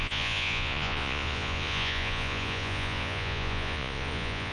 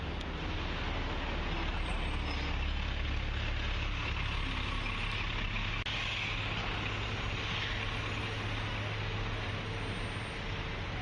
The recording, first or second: second